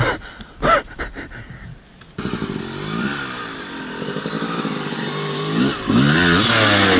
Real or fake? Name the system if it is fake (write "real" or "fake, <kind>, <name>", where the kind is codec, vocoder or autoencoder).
real